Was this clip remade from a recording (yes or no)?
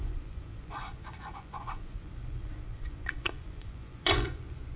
yes